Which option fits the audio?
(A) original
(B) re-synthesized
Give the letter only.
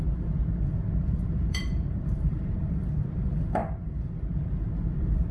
B